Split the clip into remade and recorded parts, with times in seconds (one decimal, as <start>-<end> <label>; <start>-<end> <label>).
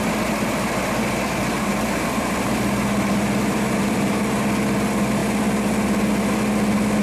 0.0-1.7 recorded; 1.7-4.2 remade; 4.2-7.0 recorded